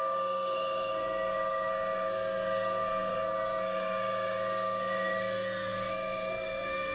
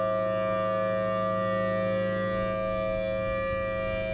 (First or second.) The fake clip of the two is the first